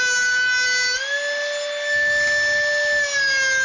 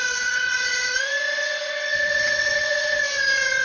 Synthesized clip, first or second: second